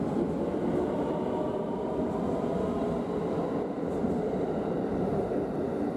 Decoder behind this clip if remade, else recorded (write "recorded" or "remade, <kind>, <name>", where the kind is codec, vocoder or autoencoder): recorded